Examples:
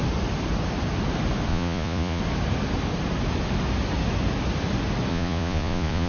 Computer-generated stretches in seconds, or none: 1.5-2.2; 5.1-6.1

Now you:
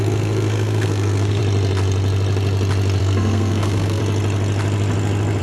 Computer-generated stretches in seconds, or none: 0.0-1.4; 3.0-4.0

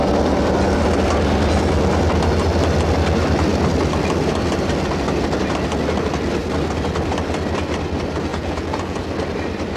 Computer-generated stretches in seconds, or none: 8.3-9.0

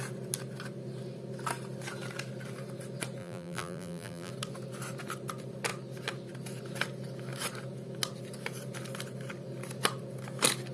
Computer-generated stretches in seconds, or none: 3.2-4.3

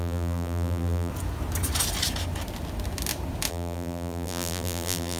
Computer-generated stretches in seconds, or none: 0.0-1.1; 3.5-5.2

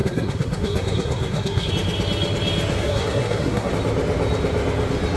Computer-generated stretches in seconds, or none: 0.0-1.7; 2.8-3.7

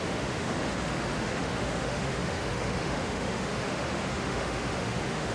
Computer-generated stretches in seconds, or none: 0.0-5.3